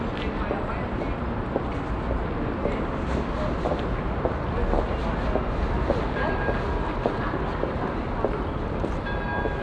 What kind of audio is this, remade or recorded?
recorded